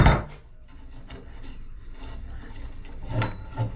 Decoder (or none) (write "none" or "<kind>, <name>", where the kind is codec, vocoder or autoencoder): none